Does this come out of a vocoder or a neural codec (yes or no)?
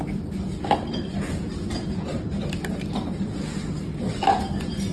no